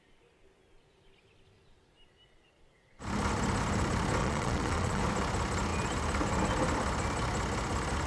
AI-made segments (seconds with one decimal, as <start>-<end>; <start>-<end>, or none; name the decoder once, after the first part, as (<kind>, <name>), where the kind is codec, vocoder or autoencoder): 4.2-5.0 (vocoder, Vocos)